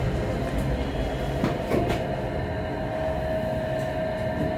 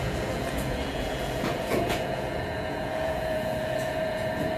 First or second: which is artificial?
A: second